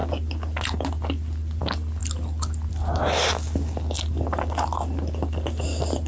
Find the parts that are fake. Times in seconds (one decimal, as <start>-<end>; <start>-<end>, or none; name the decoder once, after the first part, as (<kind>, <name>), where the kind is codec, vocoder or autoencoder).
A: none